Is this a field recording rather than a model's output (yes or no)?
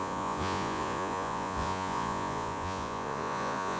no